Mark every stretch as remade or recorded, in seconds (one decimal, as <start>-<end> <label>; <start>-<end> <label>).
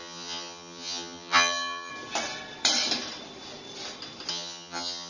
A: 0.0-1.9 remade; 1.9-4.3 recorded; 4.3-5.1 remade